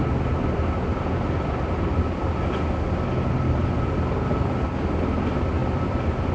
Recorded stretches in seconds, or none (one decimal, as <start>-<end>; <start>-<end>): 0.0-6.3